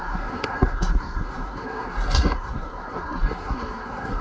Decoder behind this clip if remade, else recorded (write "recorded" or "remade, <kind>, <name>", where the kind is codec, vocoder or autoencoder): remade, codec, SNAC